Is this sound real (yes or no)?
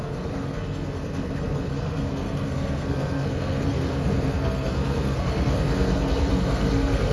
no